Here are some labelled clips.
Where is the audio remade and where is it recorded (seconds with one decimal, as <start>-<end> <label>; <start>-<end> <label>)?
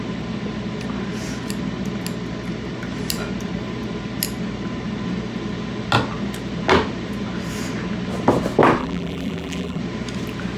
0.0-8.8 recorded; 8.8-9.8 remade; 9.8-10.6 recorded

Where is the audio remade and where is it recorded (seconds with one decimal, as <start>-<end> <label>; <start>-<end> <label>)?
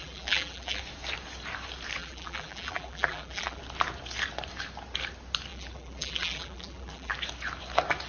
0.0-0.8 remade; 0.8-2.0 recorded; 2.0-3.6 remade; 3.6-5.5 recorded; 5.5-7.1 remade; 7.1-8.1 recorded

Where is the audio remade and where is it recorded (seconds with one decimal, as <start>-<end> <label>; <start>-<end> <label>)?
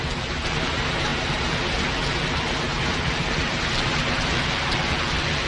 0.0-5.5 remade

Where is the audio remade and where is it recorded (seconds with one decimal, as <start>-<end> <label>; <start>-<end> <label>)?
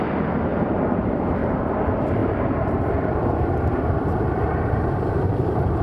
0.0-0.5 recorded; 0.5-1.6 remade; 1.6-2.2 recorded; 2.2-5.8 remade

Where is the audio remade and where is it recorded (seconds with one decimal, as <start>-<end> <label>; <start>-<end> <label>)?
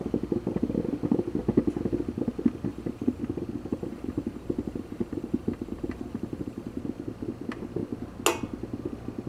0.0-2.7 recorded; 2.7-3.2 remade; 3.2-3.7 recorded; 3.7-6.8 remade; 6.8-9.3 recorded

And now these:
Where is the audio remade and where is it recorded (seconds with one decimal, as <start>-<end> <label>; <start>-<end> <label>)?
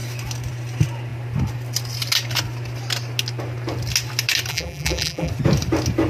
0.0-4.5 recorded; 4.5-5.3 remade; 5.3-6.1 recorded